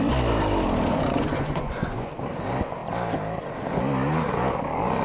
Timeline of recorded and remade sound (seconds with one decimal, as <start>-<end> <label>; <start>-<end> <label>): 0.0-0.9 recorded; 0.9-2.1 remade; 2.1-5.0 recorded

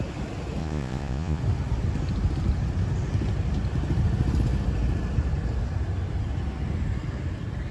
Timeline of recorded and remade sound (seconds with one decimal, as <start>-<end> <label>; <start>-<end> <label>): 0.0-0.6 recorded; 0.6-1.4 remade; 1.4-7.7 recorded

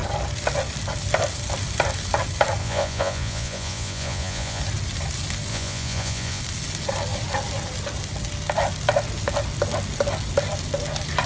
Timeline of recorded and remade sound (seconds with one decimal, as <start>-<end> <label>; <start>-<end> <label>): 0.0-2.6 recorded; 2.6-4.6 remade; 4.6-5.5 recorded; 5.5-6.4 remade; 6.4-11.3 recorded